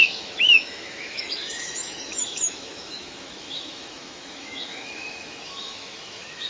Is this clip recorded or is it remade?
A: remade